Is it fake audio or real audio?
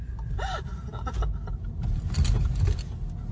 real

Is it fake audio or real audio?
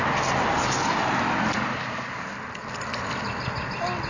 real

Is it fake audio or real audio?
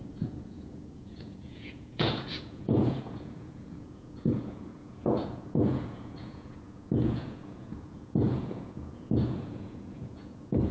fake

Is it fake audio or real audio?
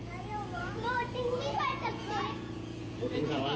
fake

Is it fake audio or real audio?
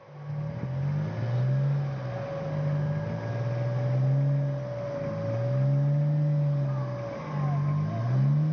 real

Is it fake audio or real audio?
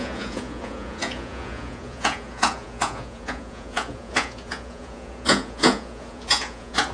fake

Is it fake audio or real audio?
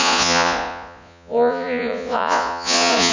fake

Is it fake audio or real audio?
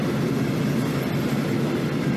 real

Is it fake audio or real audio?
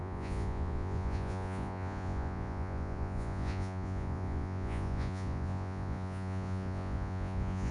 fake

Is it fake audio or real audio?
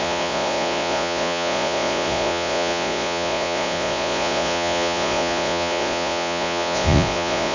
fake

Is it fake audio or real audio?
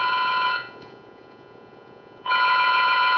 fake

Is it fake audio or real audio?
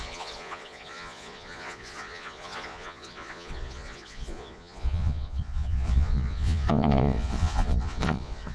fake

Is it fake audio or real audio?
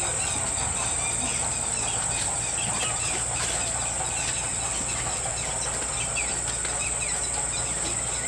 real